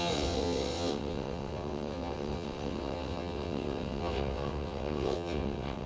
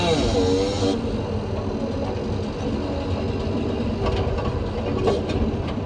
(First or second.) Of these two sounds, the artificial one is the first